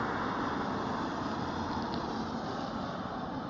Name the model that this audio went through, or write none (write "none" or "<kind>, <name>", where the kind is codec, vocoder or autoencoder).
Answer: none